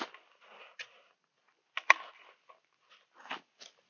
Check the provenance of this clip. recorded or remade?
recorded